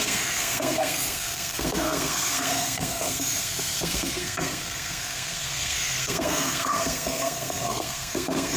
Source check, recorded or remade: remade